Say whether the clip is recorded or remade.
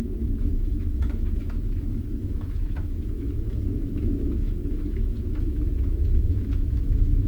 remade